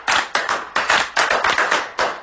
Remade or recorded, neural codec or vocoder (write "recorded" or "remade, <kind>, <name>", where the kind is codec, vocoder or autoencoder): recorded